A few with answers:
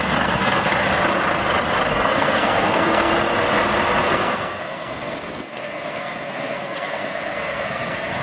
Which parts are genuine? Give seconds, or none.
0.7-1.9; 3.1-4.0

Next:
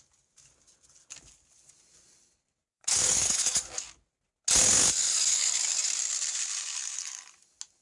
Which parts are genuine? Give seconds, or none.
0.0-2.7; 4.0-5.0; 6.0-7.8

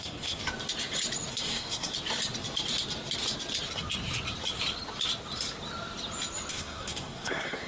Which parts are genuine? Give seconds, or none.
0.4-1.3; 1.9-6.5